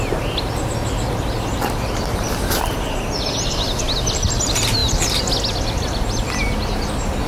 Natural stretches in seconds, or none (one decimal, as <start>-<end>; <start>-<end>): 0.0-7.3